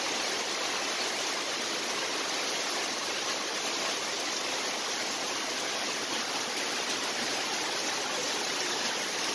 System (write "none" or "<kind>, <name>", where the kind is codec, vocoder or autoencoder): none